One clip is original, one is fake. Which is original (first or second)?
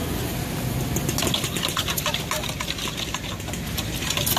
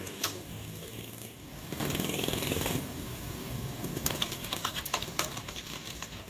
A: first